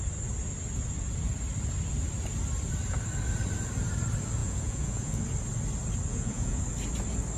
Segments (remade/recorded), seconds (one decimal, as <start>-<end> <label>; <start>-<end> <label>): 0.0-4.4 recorded; 4.4-5.2 remade; 5.2-6.1 recorded; 6.1-6.6 remade; 6.6-7.4 recorded